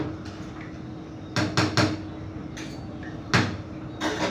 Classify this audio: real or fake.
real